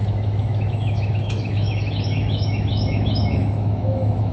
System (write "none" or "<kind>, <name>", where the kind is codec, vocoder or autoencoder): autoencoder, DAC-VAE